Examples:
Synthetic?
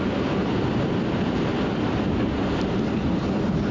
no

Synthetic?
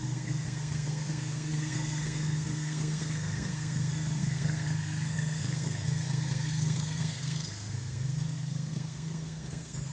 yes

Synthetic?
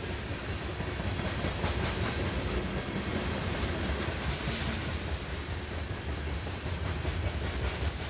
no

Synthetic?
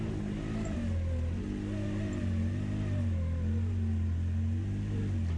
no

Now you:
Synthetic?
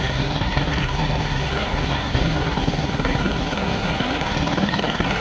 yes